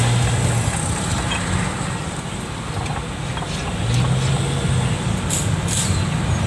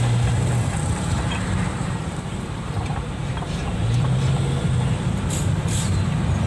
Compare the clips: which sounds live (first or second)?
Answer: first